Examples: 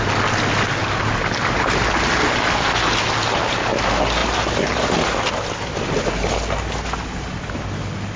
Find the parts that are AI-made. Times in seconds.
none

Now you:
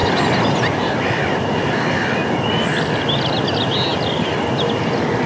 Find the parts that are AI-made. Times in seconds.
none

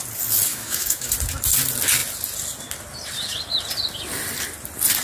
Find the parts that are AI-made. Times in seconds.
0.5-1.1 (autoencoder, DAC-VAE)

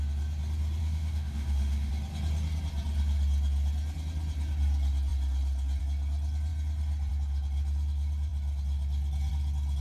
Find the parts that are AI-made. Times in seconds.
0.8-1.9 (autoencoder, DAC-VAE)

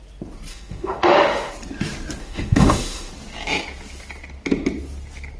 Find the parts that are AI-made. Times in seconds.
0.5-1.5 (autoencoder, DAC-VAE); 2.2-3.1

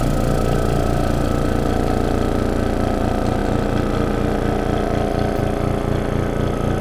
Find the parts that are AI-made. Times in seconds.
none

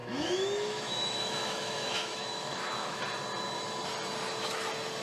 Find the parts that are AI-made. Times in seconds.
0.0-3.0 (autoencoder, DAC-VAE)